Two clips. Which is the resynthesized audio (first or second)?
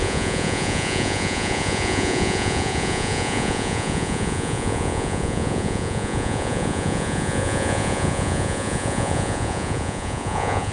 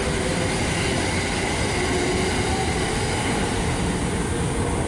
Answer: first